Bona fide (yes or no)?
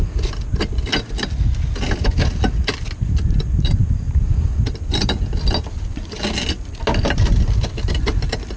yes